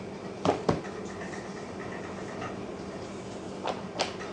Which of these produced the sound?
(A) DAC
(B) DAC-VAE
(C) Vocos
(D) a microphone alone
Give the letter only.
D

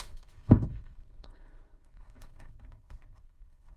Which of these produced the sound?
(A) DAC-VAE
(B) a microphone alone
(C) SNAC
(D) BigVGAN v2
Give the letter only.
C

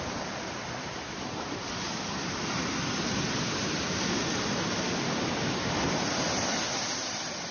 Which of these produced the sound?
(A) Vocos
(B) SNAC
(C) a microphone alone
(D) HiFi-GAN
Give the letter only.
C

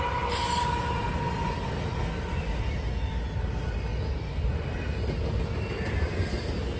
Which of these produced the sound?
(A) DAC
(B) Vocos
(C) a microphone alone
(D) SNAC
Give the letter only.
C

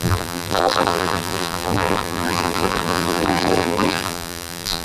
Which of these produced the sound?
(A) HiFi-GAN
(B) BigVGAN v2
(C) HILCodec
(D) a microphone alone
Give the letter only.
B